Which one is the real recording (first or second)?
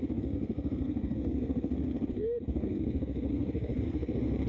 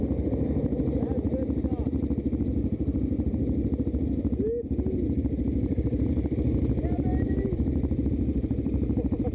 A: second